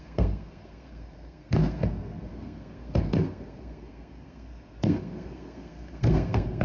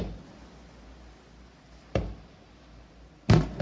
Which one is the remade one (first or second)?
first